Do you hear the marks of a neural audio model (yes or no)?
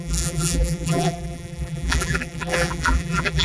yes